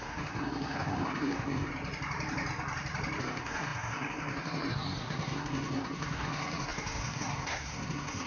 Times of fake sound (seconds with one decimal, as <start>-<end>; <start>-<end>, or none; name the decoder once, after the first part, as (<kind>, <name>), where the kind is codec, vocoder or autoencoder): 0.0-1.7 (codec, SNAC); 3.2-8.3